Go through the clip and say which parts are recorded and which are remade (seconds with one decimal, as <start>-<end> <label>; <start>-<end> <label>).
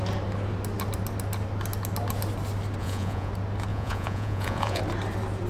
0.0-2.8 recorded; 2.8-3.3 remade; 3.3-3.7 recorded; 3.7-4.8 remade; 4.8-5.5 recorded